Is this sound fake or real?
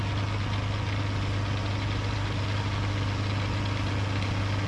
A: real